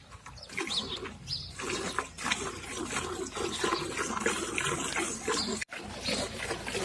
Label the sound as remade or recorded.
recorded